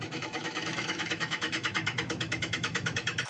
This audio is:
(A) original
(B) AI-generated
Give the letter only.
B